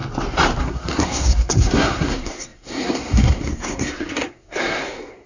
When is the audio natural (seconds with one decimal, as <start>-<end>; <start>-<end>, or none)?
0.0-0.6

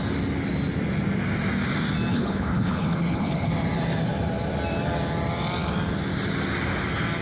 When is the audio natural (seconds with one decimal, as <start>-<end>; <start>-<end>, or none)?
0.0-2.1; 3.5-7.2

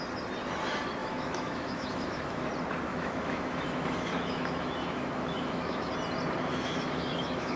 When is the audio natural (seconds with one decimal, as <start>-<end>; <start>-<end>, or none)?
0.0-1.0; 2.5-2.9; 5.9-6.5

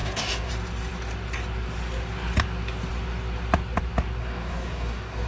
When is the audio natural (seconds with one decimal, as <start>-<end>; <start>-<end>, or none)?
0.5-4.2

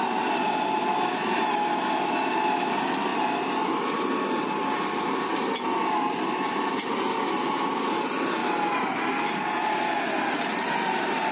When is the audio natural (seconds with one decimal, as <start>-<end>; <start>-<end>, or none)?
0.0-11.3